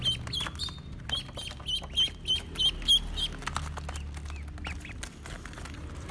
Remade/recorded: recorded